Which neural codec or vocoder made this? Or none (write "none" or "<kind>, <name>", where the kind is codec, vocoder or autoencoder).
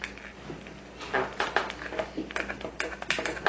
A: none